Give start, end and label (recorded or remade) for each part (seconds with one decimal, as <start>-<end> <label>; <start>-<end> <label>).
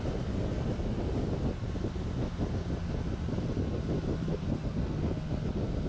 0.0-4.3 recorded; 4.3-5.0 remade; 5.0-5.9 recorded